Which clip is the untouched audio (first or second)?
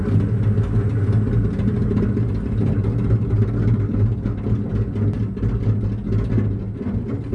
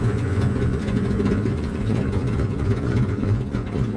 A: first